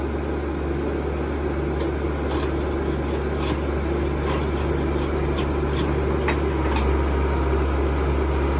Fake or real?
real